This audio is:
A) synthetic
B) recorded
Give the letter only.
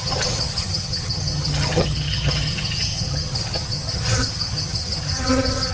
A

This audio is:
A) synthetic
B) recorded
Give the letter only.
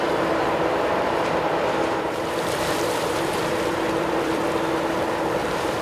A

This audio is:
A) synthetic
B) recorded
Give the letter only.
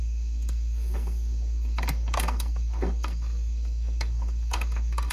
A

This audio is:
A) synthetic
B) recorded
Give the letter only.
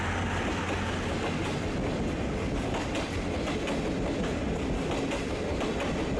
B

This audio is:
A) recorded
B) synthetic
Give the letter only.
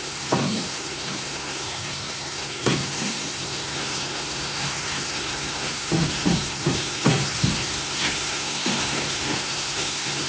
B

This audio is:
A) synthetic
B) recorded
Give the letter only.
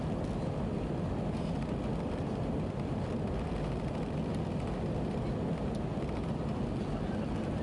B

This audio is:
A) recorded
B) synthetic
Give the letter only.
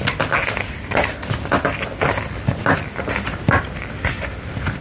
A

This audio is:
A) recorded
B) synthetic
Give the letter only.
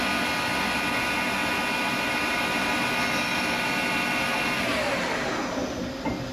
A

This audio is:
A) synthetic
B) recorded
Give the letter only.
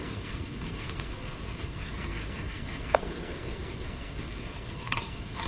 A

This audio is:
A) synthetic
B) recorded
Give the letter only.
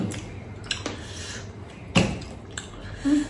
B